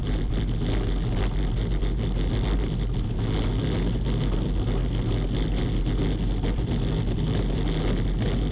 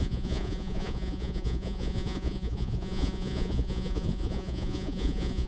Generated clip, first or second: second